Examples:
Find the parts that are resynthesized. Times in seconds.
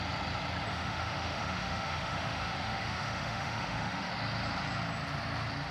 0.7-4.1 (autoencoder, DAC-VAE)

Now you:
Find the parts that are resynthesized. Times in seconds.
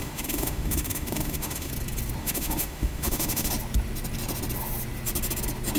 0.0-1.7 (autoencoder, DAC-VAE); 2.2-3.5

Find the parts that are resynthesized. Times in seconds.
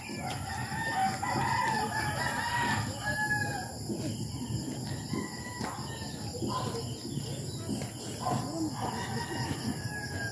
none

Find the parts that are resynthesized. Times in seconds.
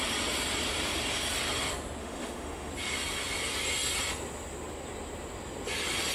2.0-2.7 (autoencoder, DAC-VAE)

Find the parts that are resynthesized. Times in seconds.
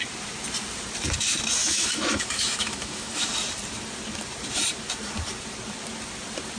1.6-3.3 (autoencoder, DAC-VAE)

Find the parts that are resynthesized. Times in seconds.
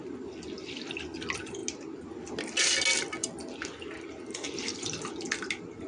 none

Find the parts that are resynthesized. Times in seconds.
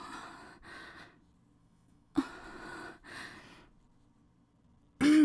1.6-2.3 (autoencoder, DAC-VAE)